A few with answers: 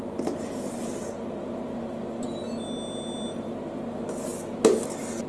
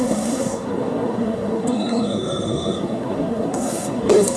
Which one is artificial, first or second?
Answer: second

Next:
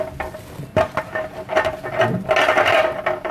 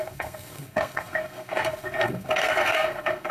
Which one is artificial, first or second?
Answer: second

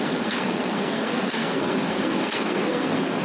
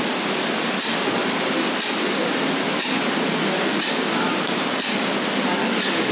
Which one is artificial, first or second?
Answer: first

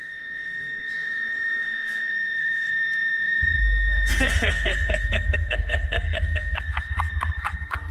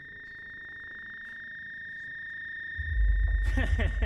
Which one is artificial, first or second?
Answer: first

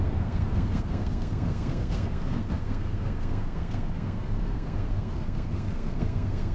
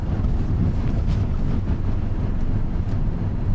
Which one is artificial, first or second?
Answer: first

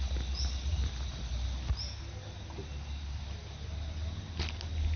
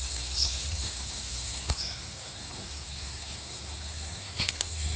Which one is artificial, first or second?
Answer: second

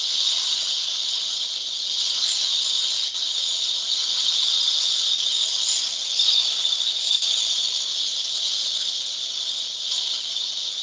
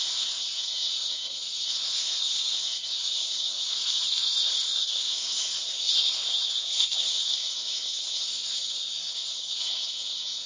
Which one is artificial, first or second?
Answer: second